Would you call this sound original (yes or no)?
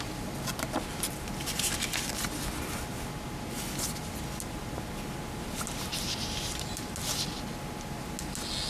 yes